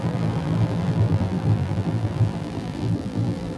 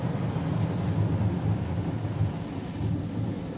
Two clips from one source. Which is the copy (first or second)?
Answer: first